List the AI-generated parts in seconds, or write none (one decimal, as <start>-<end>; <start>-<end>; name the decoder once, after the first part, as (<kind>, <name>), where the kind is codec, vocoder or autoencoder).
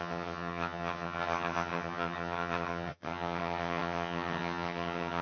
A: 0.0-5.2 (vocoder, HiFi-GAN)